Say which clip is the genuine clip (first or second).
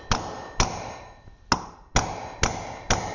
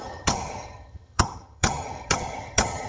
first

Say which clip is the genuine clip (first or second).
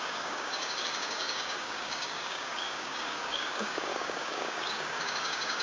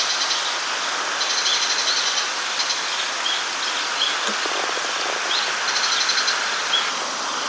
second